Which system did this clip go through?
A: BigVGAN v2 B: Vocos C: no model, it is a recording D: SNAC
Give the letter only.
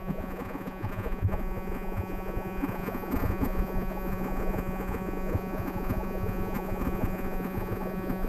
B